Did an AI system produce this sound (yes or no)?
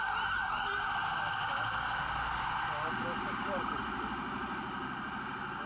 no